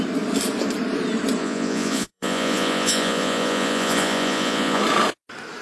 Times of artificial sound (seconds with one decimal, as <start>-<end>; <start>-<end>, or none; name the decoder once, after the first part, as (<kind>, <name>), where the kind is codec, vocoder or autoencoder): 1.4-4.8 (vocoder, Vocos)